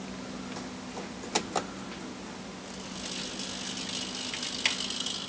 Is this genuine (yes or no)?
yes